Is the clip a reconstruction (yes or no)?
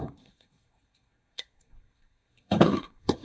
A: yes